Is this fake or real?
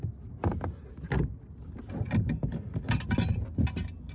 real